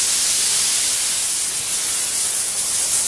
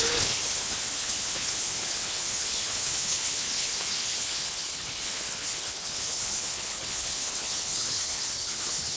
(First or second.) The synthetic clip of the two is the second